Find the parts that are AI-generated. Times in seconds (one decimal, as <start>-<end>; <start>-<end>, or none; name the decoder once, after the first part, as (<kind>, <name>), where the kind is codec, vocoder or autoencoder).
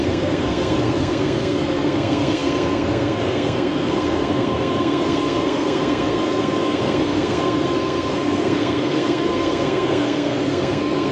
0.0-11.1 (codec, SNAC)